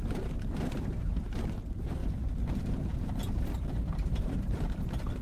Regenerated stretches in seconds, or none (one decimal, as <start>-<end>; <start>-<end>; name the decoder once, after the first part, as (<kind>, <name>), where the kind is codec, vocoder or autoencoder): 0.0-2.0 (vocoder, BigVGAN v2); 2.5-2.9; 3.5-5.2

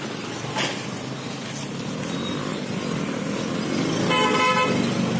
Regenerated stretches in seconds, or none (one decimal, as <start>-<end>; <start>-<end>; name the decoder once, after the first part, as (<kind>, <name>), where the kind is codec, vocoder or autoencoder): none

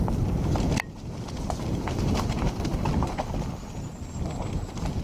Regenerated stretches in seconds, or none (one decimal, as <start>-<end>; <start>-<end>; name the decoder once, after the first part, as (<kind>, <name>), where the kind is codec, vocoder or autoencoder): 1.7-2.9 (vocoder, BigVGAN v2)

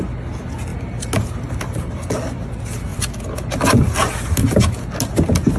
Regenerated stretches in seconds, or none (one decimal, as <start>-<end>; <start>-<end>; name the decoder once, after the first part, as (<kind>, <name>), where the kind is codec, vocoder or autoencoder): none